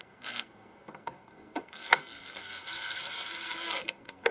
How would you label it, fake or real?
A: fake